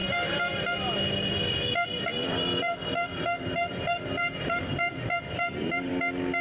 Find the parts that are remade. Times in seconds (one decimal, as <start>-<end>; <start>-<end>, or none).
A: 2.1-5.9